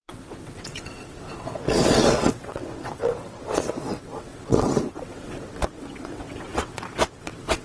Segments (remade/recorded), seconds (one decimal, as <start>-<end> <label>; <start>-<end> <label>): 0.0-7.6 remade